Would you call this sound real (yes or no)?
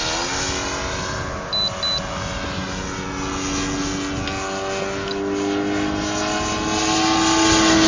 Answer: yes